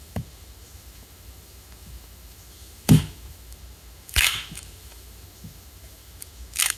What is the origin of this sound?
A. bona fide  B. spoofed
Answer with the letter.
B